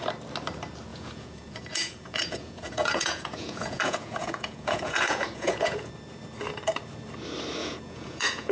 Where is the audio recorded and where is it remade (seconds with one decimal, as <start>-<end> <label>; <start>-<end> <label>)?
0.0-0.9 recorded; 0.9-5.9 remade; 5.9-7.6 recorded; 7.6-8.5 remade